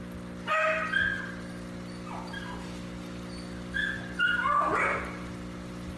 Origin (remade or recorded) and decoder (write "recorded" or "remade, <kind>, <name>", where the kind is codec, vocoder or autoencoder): recorded